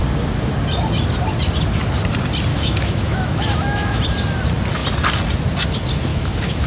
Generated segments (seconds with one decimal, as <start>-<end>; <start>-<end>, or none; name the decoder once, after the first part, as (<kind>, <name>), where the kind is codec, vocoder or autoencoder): 2.5-4.0 (autoencoder, DAC-VAE); 6.1-6.7